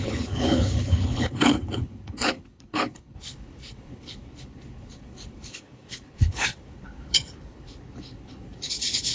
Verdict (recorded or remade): remade